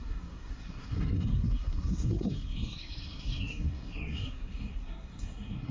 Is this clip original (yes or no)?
no